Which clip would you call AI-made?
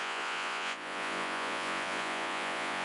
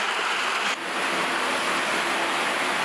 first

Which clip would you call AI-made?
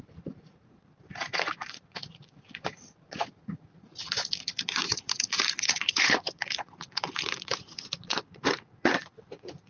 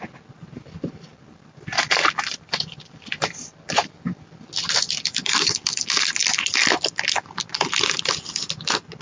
first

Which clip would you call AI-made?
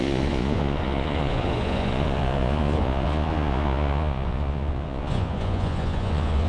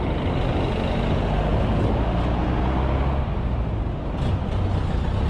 first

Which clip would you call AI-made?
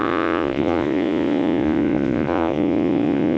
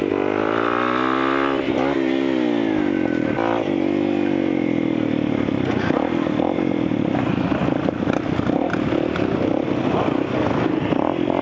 first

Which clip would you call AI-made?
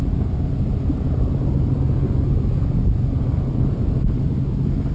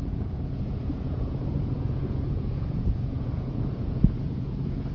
second